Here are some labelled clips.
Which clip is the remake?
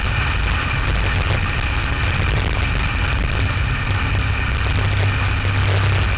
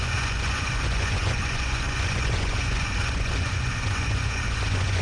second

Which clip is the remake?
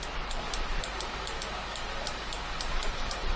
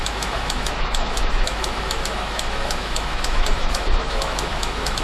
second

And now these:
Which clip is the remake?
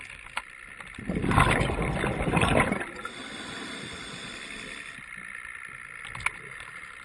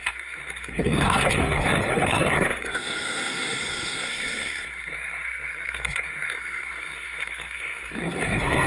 second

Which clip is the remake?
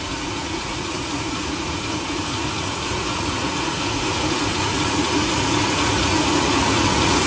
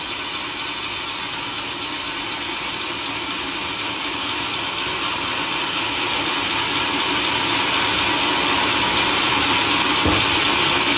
first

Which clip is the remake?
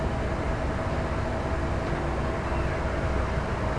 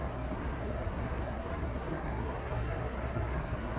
second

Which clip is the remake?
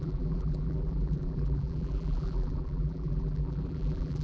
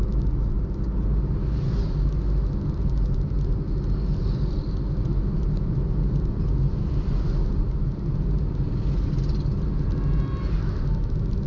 first